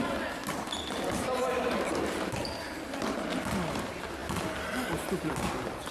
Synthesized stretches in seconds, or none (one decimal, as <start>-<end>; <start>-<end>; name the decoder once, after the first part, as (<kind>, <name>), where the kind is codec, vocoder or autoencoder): none

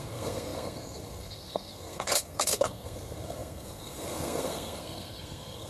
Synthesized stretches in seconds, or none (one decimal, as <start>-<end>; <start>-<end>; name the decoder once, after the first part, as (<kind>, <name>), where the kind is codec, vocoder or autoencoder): 0.0-5.7 (codec, SNAC)

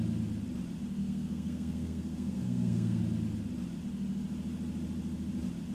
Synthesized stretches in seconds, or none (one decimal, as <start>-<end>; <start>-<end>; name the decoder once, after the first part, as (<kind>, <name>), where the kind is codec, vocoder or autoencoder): 1.0-3.0 (codec, SNAC)